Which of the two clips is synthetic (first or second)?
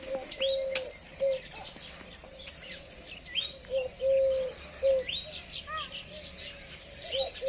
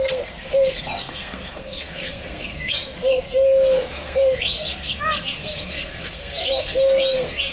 second